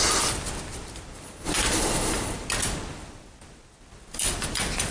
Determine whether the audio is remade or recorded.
recorded